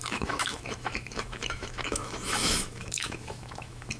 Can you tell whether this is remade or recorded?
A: remade